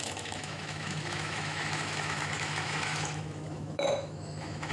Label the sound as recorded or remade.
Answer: remade